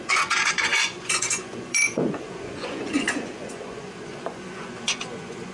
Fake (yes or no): yes